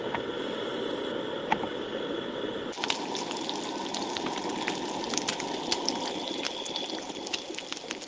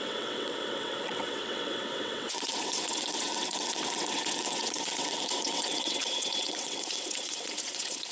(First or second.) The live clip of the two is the first